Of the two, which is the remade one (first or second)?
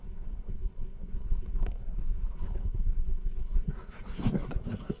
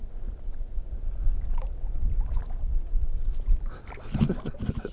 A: first